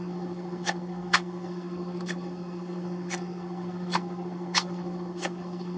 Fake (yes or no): yes